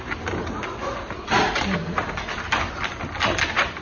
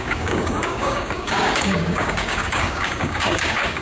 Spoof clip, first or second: second